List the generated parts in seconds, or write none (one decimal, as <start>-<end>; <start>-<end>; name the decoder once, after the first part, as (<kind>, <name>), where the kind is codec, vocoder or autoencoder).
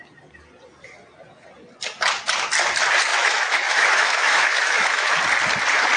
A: 3.1-5.1 (autoencoder, DAC-VAE)